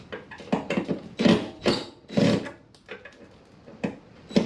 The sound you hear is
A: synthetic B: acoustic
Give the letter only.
B